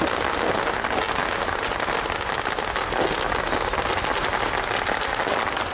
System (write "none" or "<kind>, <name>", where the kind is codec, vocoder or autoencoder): none